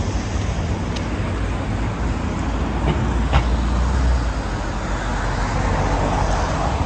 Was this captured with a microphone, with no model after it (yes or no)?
yes